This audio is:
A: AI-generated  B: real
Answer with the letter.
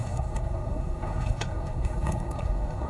A